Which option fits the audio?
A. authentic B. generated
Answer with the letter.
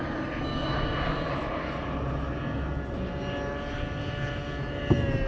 A